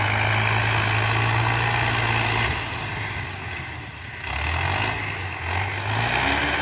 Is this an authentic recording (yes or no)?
yes